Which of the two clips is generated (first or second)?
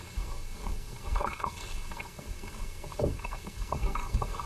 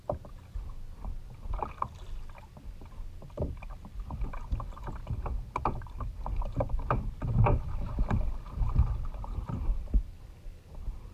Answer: first